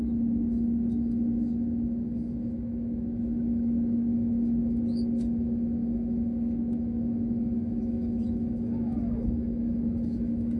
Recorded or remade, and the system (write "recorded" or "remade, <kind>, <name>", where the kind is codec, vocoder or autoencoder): remade, autoencoder, DAC-VAE